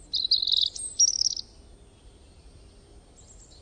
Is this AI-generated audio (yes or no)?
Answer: no